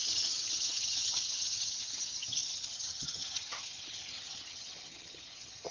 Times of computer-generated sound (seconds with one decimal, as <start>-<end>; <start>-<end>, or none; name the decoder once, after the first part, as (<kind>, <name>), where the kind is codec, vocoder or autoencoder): 0.0-5.7 (vocoder, HiFi-GAN)